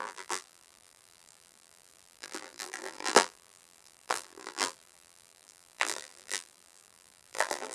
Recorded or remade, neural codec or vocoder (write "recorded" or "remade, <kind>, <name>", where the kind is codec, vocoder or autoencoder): remade, vocoder, BigVGAN v2